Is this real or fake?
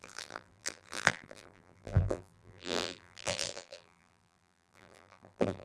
fake